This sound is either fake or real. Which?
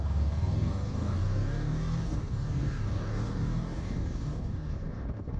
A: fake